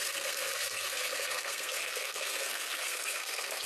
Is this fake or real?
fake